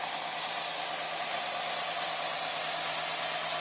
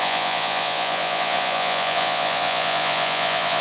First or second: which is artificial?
second